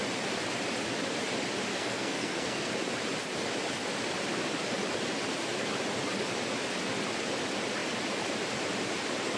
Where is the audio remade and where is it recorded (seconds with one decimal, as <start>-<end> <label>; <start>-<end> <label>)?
0.0-1.7 recorded; 1.7-2.7 remade; 2.7-9.4 recorded